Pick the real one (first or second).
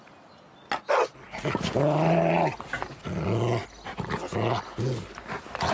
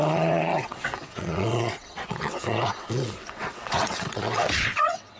first